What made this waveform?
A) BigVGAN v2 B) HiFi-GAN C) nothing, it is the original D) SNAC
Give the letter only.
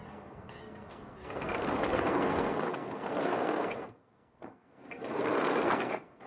D